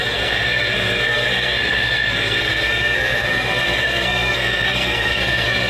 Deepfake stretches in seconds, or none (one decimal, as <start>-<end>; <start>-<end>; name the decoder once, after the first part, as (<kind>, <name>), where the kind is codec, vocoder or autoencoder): 0.0-5.7 (codec, SNAC)